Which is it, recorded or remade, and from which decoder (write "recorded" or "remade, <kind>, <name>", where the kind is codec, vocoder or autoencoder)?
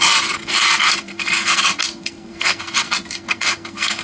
remade, codec, SNAC